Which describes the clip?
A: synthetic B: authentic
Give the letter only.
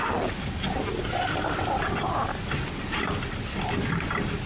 B